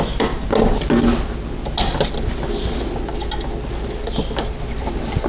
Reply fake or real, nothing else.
real